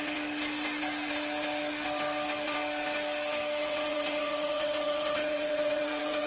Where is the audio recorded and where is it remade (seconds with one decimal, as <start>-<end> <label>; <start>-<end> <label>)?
0.0-3.6 recorded; 3.6-6.3 remade